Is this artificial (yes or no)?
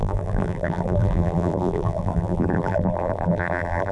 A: yes